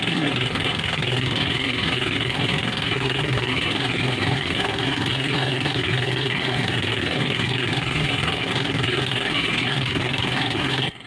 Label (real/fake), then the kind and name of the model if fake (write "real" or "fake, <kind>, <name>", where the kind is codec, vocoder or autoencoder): fake, codec, SNAC